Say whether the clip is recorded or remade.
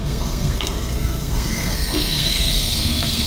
remade